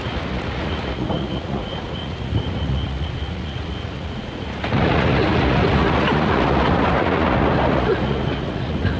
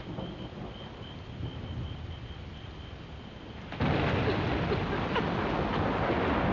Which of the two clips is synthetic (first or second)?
first